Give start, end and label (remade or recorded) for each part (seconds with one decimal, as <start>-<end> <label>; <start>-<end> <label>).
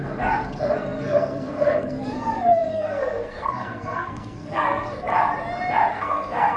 0.0-5.1 remade; 5.1-5.9 recorded; 5.9-6.6 remade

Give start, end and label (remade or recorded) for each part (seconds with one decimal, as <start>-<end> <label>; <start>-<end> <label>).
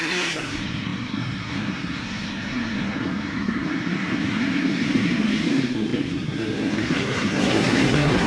0.0-8.3 remade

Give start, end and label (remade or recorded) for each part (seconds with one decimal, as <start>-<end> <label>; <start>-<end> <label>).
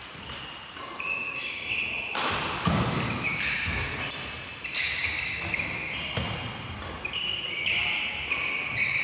0.0-9.0 recorded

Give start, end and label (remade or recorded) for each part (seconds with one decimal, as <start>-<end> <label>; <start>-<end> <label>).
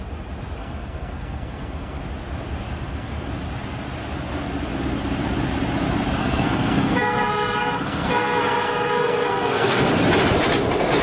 0.0-0.6 recorded; 0.6-2.0 remade; 2.0-2.8 recorded; 2.8-3.3 remade; 3.3-6.2 recorded; 6.2-9.9 remade; 9.9-11.0 recorded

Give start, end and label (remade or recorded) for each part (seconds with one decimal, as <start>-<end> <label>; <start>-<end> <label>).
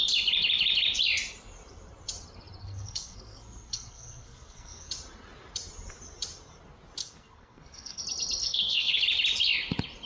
0.0-2.6 recorded; 2.6-4.9 remade; 4.9-7.0 recorded; 7.0-8.0 remade; 8.0-8.4 recorded; 8.4-9.0 remade; 9.0-10.1 recorded